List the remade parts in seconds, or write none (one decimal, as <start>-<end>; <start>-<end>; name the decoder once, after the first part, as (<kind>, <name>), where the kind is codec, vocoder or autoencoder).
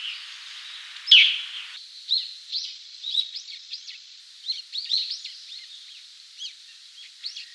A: 2.5-4.2 (vocoder, Vocos)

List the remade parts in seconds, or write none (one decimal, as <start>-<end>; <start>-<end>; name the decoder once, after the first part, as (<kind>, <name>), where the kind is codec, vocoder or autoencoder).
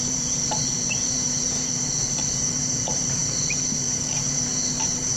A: 0.0-5.2 (vocoder, BigVGAN v2)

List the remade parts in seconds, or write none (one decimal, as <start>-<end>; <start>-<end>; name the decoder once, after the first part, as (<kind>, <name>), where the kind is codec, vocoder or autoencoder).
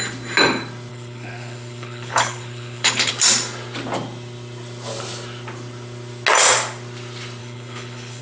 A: 0.9-3.1 (codec, HILCodec); 7.4-8.2